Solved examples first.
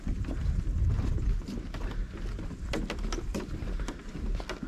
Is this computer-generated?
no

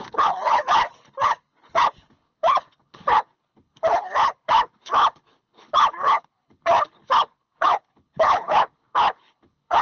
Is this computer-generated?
yes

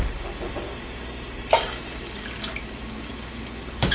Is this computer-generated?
no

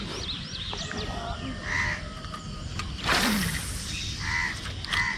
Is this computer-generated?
no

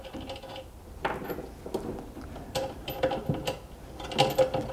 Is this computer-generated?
no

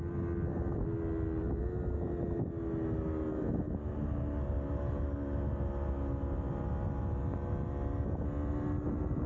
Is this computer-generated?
no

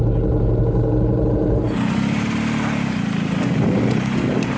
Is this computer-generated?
no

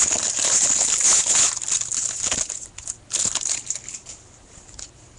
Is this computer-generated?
no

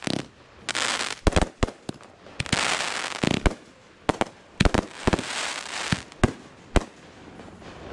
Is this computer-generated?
no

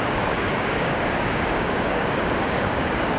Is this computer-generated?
yes